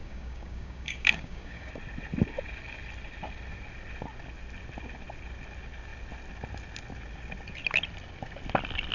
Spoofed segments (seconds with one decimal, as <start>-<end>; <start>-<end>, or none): 0.0-1.7